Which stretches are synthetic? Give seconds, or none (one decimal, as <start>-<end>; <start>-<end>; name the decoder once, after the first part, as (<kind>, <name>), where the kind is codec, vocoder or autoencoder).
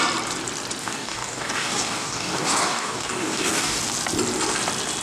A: 0.8-3.8 (codec, DAC)